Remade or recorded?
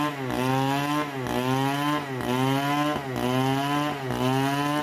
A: recorded